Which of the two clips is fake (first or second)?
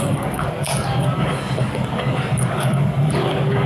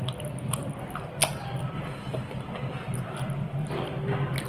first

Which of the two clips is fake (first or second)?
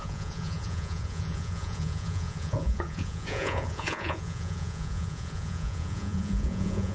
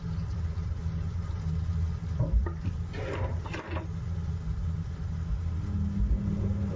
first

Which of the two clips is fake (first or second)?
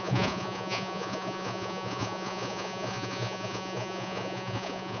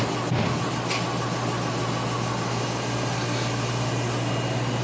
first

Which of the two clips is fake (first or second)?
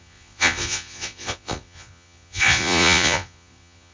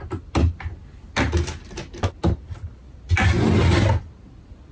first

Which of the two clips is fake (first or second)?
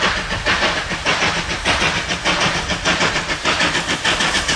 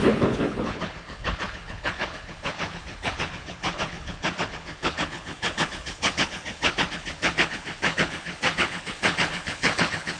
second